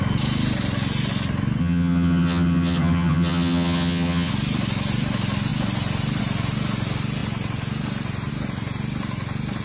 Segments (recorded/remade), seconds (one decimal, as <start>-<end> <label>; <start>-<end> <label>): 0.0-1.6 recorded; 1.6-4.3 remade; 4.3-9.6 recorded